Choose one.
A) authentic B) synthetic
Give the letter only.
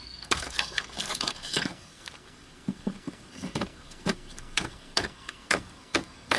B